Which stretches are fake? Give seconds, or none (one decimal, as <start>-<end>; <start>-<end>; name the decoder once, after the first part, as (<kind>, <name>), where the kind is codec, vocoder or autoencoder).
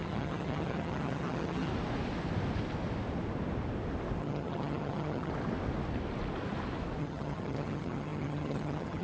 0.0-1.7 (vocoder, HiFi-GAN); 4.2-5.3; 7.0-9.0